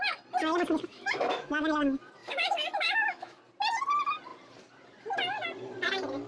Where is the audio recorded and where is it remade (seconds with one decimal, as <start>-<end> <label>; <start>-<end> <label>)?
0.0-0.9 recorded; 0.9-1.7 remade; 1.7-2.2 recorded; 2.2-3.4 remade; 3.4-6.3 recorded